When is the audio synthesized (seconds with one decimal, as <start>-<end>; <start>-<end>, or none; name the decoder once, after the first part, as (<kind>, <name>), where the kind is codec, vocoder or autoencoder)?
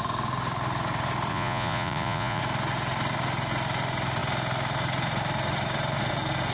1.3-2.4 (vocoder, Vocos)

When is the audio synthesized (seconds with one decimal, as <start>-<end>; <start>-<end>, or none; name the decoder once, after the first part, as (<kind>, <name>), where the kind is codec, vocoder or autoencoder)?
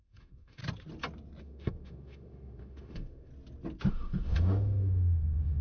0.0-0.6 (autoencoder, DAC-VAE); 1.4-3.3; 3.9-5.6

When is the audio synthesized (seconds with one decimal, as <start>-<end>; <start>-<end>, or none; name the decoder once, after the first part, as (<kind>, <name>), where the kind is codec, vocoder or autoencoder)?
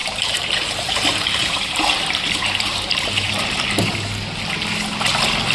0.0-3.3 (vocoder, BigVGAN v2)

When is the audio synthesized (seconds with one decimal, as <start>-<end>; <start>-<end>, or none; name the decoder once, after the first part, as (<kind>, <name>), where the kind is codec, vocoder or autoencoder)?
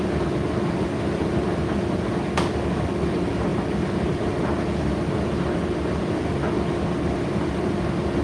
none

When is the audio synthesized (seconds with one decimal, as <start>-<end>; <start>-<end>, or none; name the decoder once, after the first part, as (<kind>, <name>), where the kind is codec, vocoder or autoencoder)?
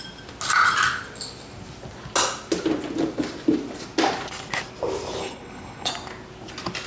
5.2-5.9 (codec, HILCodec)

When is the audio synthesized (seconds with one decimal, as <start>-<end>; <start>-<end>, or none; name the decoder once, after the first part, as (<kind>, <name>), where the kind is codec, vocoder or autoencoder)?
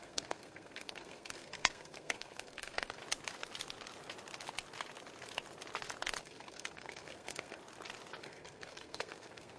0.0-3.0 (codec, SNAC); 6.2-7.6; 8.2-9.6